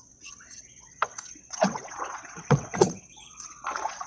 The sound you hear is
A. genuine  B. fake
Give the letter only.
B